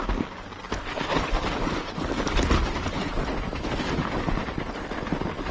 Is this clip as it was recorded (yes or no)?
yes